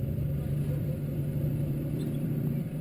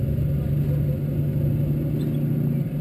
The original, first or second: second